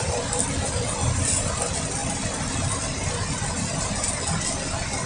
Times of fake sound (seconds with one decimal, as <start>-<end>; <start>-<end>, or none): 0.0-1.6